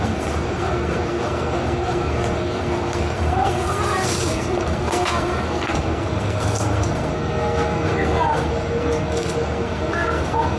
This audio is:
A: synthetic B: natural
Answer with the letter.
A